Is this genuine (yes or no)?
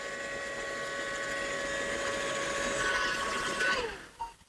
yes